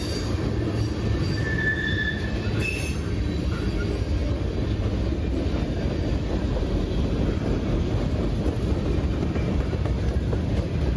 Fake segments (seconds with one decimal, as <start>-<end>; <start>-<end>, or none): none